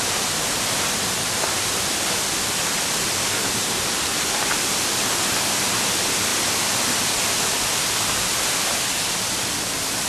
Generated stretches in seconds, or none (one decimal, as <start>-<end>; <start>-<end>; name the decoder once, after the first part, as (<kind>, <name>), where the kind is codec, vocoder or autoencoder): 0.0-10.1 (vocoder, BigVGAN v2)